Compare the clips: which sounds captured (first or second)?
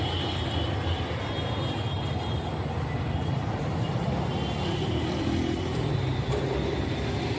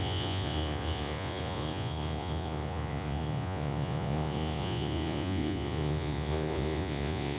first